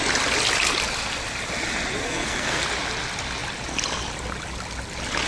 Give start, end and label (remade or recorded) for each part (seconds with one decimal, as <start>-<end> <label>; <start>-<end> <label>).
0.0-2.0 recorded; 2.0-2.6 remade; 2.6-5.3 recorded